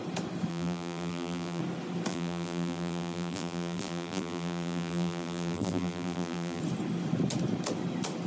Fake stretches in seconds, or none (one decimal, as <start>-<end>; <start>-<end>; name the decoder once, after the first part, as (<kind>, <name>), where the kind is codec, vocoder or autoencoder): 0.5-1.6 (vocoder, BigVGAN v2); 2.1-6.6